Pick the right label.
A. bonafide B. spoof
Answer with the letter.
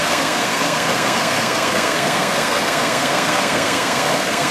B